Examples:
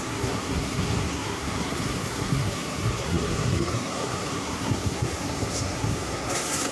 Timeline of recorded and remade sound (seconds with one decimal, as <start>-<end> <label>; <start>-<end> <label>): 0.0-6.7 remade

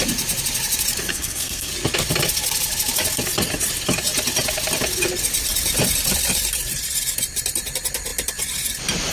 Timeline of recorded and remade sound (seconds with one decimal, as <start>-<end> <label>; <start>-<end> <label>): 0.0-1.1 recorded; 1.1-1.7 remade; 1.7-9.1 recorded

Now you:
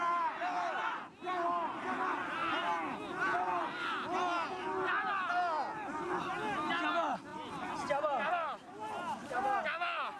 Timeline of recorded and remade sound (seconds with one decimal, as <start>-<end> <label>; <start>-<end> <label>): 0.0-10.2 recorded

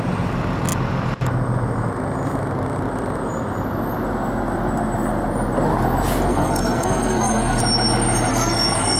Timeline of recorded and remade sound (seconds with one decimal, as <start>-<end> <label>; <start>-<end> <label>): 0.0-6.3 recorded; 6.3-7.6 remade; 7.6-8.3 recorded; 8.3-9.0 remade

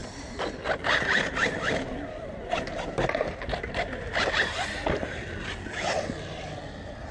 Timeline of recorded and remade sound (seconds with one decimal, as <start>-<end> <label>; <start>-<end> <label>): 0.0-7.1 recorded

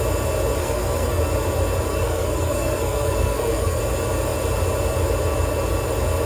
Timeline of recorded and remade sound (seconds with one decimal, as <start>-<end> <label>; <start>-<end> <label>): 0.0-0.6 recorded; 0.6-1.2 remade; 1.2-1.9 recorded; 1.9-3.8 remade; 3.8-6.3 recorded

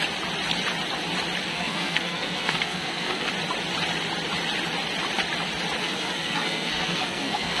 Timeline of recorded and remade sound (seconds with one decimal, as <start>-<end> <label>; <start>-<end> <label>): 0.0-1.5 recorded; 1.5-3.3 remade; 3.3-5.8 recorded; 5.8-7.6 remade

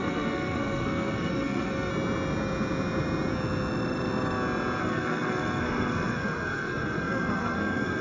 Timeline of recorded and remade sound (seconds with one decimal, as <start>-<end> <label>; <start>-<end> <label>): 0.0-1.9 remade; 1.9-4.8 recorded; 4.8-8.0 remade